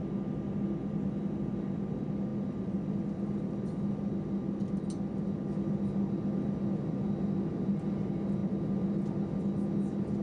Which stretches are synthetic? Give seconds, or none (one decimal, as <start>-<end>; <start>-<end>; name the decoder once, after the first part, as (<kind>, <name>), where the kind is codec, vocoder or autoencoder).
none